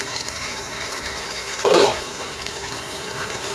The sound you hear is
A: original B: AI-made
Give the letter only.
B